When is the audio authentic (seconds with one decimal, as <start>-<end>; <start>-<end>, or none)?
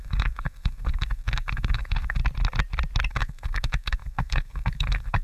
2.2-3.1